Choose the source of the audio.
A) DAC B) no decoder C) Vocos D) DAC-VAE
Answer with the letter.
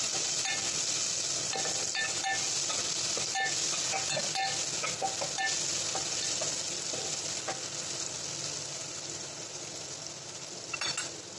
B